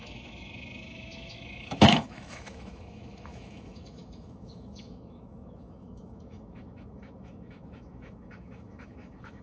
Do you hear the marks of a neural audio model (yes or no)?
yes